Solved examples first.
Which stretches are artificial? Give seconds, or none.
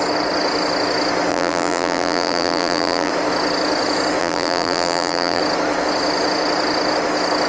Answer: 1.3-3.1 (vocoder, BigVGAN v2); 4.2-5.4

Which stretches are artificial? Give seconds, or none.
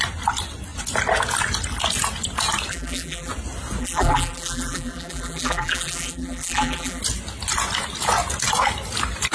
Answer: 2.7-3.3 (vocoder, BigVGAN v2); 3.8-7.0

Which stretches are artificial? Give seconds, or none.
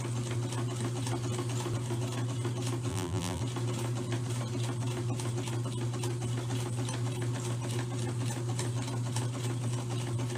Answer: 2.9-3.4 (vocoder, BigVGAN v2)